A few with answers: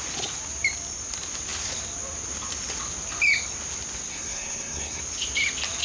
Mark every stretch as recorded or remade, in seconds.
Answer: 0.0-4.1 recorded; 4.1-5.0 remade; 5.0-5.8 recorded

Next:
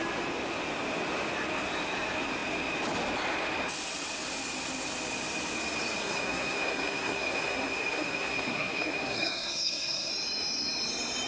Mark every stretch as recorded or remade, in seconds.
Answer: 0.0-6.0 recorded; 6.0-10.1 remade; 10.1-11.3 recorded

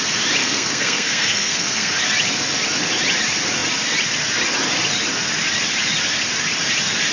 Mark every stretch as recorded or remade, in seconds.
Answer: 0.0-0.4 recorded; 0.4-1.9 remade; 1.9-7.1 recorded

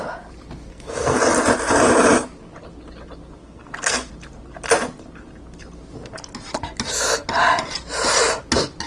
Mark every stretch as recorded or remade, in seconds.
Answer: 0.0-0.7 recorded; 0.7-1.2 remade; 1.2-3.4 recorded; 3.4-4.1 remade; 4.1-8.9 recorded

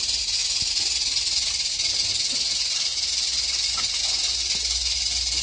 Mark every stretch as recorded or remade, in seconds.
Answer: 0.0-5.4 recorded

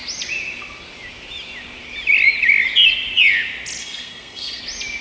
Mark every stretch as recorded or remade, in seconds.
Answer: 0.0-3.8 recorded; 3.8-4.6 remade; 4.6-5.0 recorded

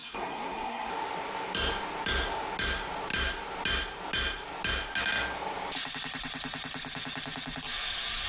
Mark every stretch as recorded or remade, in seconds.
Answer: 0.0-0.9 remade; 0.9-8.3 recorded

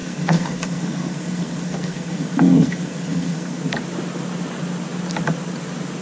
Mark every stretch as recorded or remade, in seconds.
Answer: 0.0-3.6 remade; 3.6-6.0 recorded